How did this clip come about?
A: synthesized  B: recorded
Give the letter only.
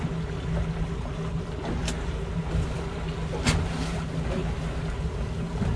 B